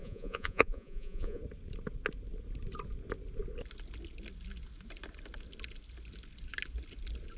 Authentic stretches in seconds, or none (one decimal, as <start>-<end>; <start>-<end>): 1.4-7.4